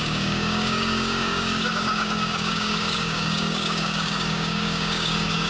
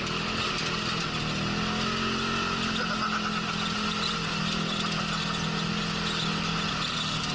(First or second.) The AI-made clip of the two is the first